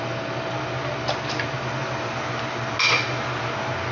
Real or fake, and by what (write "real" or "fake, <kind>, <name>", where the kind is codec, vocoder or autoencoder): real